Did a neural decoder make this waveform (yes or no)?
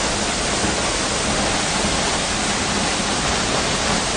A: no